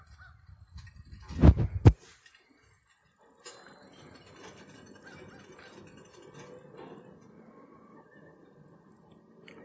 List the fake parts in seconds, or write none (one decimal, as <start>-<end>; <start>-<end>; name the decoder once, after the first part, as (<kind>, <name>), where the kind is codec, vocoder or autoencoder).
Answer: none